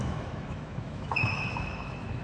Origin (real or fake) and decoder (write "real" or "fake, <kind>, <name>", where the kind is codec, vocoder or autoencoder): fake, autoencoder, DAC-VAE